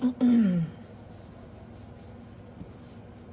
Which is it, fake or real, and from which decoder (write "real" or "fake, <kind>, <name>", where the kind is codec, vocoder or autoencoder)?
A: real